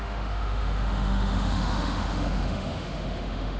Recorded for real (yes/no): no